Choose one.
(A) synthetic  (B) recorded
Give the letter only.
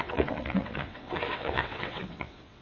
A